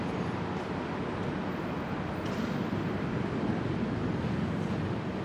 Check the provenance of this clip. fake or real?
fake